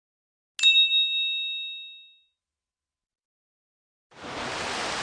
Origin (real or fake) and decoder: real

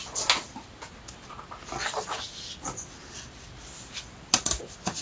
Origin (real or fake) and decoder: real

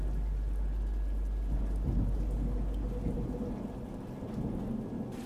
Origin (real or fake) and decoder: real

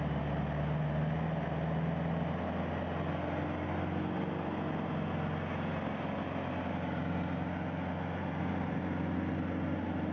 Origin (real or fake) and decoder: real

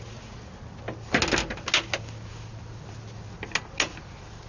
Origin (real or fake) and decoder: real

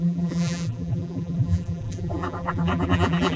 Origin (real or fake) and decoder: fake, vocoder, BigVGAN v2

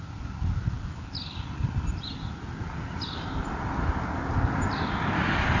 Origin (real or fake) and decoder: real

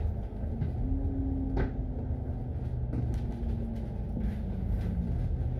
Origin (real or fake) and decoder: real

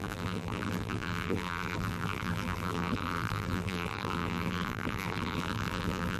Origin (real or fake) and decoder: fake, vocoder, BigVGAN v2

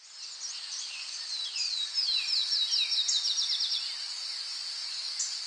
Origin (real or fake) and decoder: real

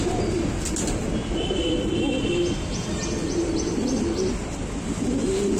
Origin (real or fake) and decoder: real